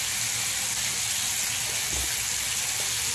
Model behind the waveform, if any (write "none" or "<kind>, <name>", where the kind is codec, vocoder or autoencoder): none